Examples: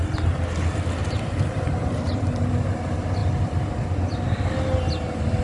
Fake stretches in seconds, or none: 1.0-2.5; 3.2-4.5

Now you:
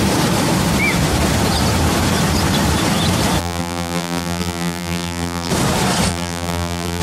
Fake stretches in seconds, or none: 3.4-5.5; 6.1-7.0